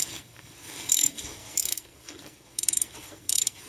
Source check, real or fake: fake